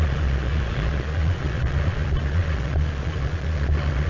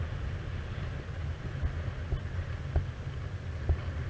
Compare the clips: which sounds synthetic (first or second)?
first